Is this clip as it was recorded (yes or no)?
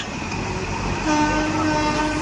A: yes